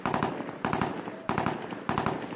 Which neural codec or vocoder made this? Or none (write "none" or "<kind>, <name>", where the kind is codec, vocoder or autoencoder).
none